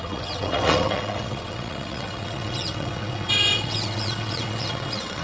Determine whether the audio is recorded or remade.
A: remade